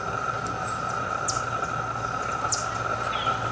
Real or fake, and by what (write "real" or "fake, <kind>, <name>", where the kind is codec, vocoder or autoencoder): real